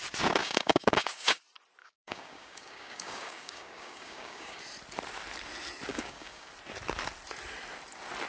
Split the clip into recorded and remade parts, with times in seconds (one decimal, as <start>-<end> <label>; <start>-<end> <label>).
0.0-0.4 recorded; 0.4-1.4 remade; 1.4-1.8 recorded; 1.8-4.6 remade; 4.6-5.9 recorded; 5.9-6.5 remade; 6.5-8.3 recorded